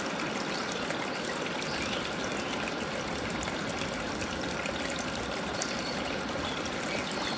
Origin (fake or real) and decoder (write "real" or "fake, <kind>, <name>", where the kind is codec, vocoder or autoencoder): real